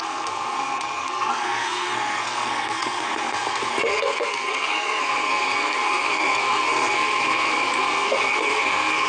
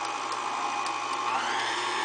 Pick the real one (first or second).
second